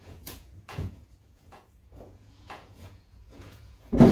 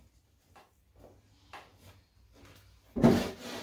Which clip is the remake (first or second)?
first